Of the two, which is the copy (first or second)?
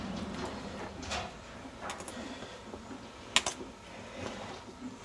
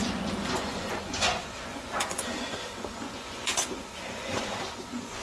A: second